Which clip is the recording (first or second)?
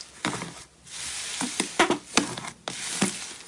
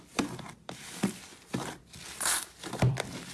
first